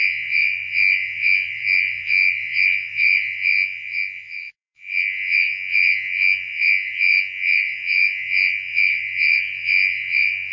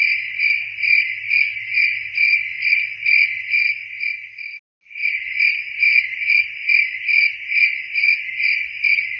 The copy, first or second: first